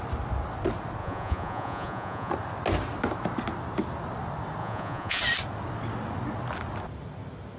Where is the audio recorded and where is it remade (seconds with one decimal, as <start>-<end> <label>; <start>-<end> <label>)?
0.0-1.0 recorded; 1.0-2.3 remade; 2.3-4.6 recorded; 4.6-5.2 remade; 5.2-7.6 recorded